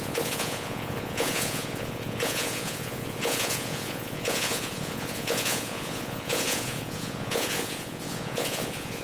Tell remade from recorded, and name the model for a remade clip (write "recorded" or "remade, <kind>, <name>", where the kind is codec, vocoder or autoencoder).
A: remade, vocoder, Vocos